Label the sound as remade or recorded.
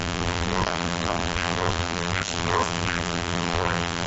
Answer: remade